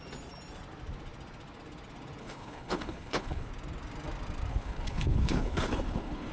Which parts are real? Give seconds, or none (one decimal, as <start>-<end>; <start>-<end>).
0.0-2.2; 3.5-4.5